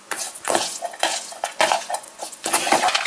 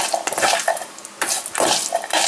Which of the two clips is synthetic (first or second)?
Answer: first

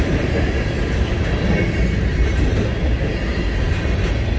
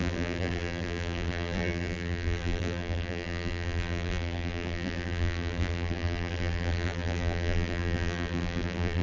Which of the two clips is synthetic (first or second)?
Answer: second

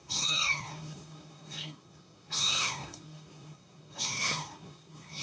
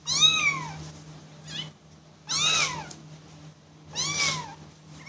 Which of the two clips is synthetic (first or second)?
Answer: first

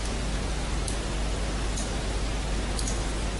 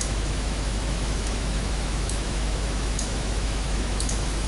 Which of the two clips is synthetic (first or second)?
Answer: second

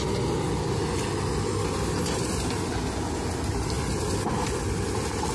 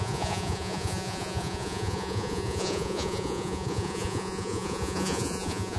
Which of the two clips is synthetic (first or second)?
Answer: second